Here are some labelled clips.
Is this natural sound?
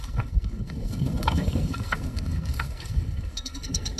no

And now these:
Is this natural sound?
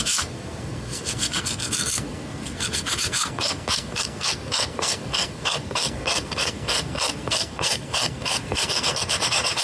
no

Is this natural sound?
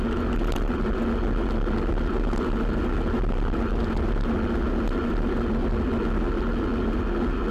yes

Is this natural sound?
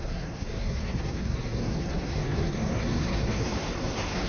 no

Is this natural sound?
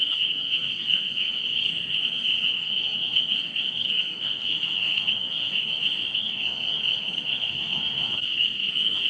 no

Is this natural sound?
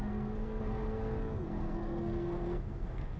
no